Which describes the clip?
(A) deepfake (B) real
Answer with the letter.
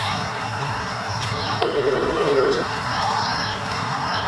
A